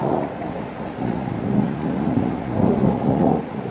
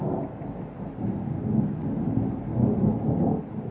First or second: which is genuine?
second